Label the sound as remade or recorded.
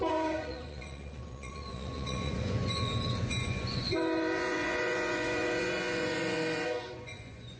remade